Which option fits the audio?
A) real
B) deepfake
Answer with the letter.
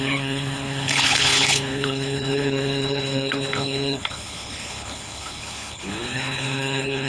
B